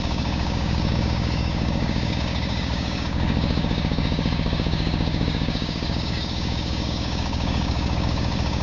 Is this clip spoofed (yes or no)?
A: yes